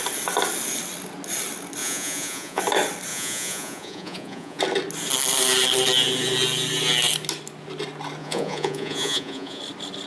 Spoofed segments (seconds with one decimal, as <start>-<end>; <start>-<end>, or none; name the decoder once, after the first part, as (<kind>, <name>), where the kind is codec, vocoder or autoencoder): 1.8-2.6 (vocoder, Vocos); 3.1-4.6; 8.2-9.6